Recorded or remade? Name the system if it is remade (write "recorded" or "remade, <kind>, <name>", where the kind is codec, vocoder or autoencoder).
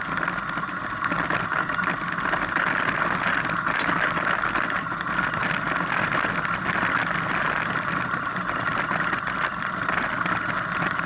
recorded